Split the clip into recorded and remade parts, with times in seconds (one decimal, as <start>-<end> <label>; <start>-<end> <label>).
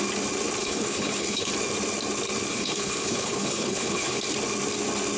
0.0-0.6 recorded; 0.6-1.5 remade; 1.5-2.5 recorded; 2.5-4.2 remade; 4.2-5.2 recorded